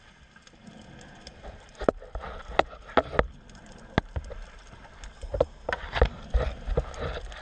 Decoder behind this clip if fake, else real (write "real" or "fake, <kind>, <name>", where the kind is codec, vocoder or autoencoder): real